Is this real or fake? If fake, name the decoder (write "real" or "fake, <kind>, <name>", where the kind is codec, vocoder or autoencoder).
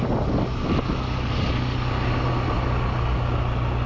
real